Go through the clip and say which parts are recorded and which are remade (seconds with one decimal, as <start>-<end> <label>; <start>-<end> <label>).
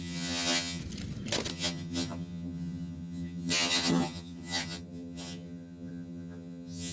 0.0-0.8 remade; 0.8-1.5 recorded; 1.5-6.9 remade